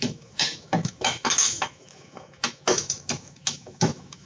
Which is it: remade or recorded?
remade